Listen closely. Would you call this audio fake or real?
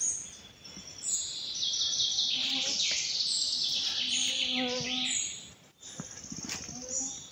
real